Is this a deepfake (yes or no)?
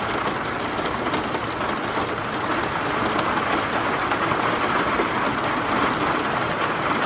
no